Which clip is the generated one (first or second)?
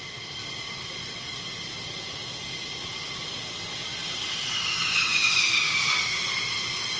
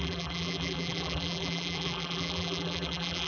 second